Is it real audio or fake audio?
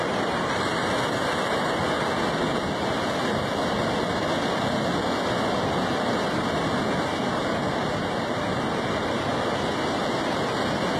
real